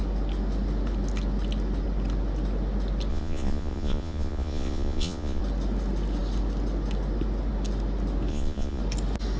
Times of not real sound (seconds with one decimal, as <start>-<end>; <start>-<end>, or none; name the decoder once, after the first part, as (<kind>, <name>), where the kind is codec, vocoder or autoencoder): 3.1-5.4 (vocoder, Vocos); 8.3-8.8